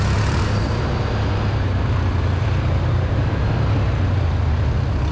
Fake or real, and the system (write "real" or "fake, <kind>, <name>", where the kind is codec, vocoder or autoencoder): real